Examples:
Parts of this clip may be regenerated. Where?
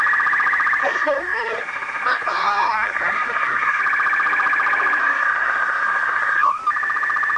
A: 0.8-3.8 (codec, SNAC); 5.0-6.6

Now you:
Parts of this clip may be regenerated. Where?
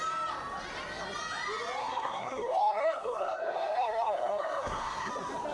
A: 1.8-5.1 (codec, SNAC)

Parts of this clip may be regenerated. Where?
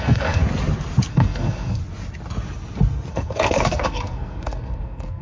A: 0.0-0.4 (codec, SNAC); 1.1-1.8; 3.1-5.2